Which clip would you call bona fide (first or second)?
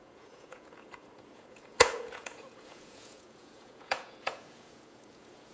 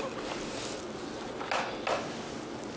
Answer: second